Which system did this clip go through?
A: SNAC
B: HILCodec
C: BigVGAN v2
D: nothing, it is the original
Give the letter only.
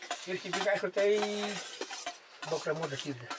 D